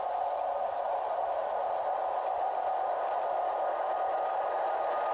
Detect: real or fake real